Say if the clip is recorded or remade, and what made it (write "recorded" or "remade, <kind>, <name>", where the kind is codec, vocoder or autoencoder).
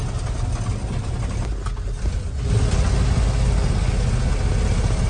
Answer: recorded